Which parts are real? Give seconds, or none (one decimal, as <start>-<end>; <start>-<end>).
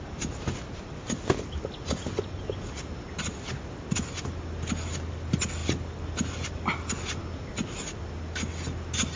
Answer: 0.0-9.2